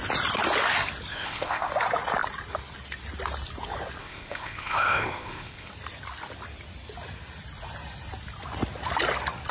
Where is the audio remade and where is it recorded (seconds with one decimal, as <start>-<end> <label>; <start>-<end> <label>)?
0.0-1.1 recorded; 1.1-1.7 remade; 1.7-4.0 recorded; 4.0-5.7 remade; 5.7-9.5 recorded